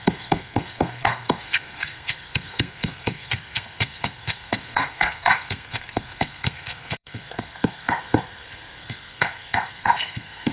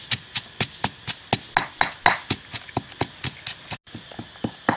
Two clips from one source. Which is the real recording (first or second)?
second